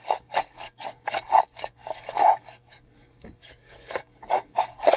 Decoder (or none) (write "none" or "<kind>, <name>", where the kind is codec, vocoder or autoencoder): codec, DAC